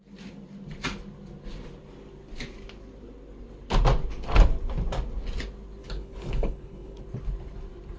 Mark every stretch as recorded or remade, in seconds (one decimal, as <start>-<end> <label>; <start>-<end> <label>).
0.0-5.8 recorded; 5.8-7.0 remade; 7.0-8.0 recorded